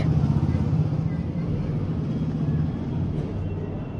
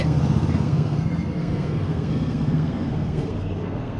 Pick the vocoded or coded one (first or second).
second